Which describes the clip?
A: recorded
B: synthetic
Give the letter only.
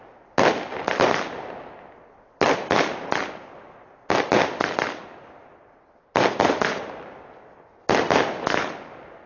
A